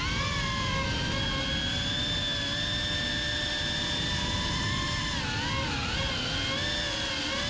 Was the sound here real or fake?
real